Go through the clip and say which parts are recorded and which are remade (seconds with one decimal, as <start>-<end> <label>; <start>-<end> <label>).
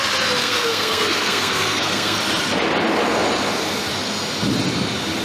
0.0-0.4 recorded; 0.4-2.2 remade; 2.2-5.2 recorded